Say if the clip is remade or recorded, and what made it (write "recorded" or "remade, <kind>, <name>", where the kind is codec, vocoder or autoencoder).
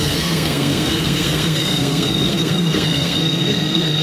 remade, codec, SNAC